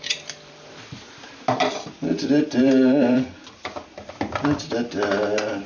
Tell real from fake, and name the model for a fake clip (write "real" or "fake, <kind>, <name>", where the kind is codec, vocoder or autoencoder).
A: fake, vocoder, BigVGAN v2